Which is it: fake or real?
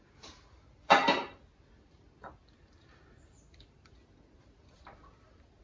real